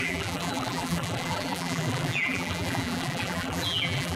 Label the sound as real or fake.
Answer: fake